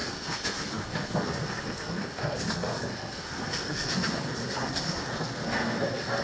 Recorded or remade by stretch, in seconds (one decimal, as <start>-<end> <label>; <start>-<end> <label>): 0.0-6.2 remade